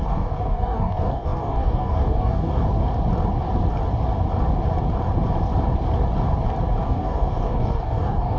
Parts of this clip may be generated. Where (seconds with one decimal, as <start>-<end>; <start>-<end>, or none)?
0.0-2.6; 6.8-8.4